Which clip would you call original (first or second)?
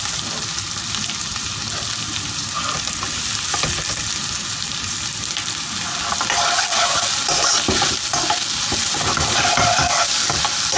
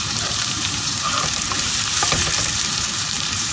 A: first